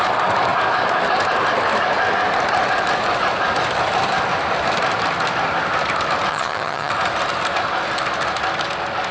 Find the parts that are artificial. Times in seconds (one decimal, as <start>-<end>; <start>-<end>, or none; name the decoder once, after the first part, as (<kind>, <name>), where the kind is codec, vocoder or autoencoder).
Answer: 6.3-6.9 (vocoder, HiFi-GAN)